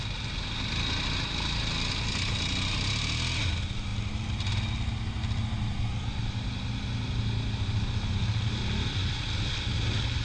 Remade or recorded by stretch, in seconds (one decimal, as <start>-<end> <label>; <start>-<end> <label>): 0.0-10.2 recorded